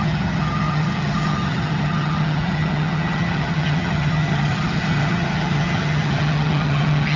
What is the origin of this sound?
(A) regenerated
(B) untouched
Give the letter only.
A